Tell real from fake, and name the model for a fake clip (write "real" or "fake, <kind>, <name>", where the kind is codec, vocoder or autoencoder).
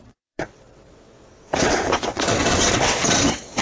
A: fake, vocoder, WaveNeXt